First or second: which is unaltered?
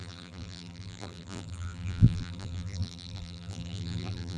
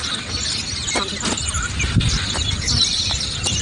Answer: second